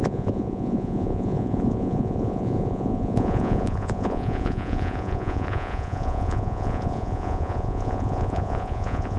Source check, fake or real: fake